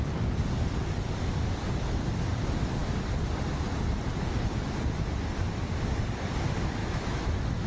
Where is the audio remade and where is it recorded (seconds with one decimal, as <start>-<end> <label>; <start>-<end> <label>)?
0.0-6.8 recorded; 6.8-7.7 remade